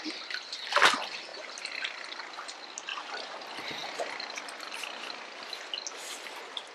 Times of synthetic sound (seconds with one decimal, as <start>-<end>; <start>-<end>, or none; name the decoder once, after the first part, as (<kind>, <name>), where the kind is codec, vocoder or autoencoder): 2.9-3.4 (vocoder, BigVGAN v2)